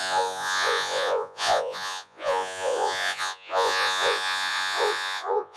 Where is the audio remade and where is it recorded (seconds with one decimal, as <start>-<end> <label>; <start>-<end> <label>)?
0.0-5.6 remade